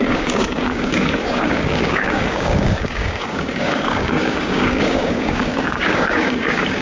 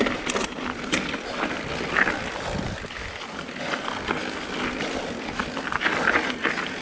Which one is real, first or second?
second